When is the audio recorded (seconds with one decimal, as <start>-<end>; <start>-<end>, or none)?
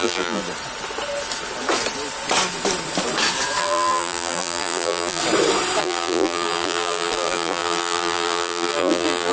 0.4-3.6; 5.2-5.8